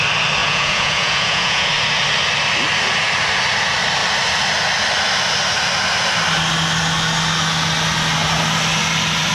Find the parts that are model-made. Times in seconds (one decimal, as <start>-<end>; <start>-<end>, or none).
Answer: 0.4-1.7